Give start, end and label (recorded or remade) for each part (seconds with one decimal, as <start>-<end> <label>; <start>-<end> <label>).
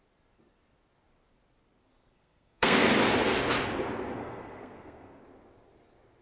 0.0-1.9 recorded; 1.9-2.9 remade; 2.9-4.2 recorded; 4.2-5.2 remade; 5.2-6.2 recorded